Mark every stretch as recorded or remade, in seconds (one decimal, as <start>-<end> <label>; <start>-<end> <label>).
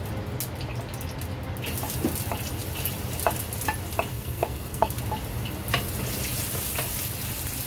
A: 0.0-4.1 recorded; 4.1-5.0 remade; 5.0-7.7 recorded